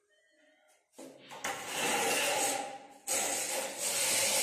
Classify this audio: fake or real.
real